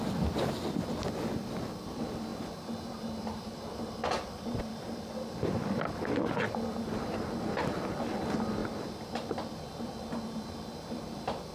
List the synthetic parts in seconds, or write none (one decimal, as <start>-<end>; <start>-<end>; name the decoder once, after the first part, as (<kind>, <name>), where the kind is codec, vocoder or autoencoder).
0.0-11.5 (vocoder, BigVGAN v2)